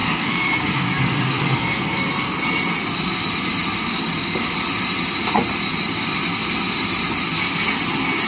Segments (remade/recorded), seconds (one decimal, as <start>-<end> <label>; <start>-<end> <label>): 0.0-2.1 remade; 2.1-3.9 recorded; 3.9-4.5 remade; 4.5-8.3 recorded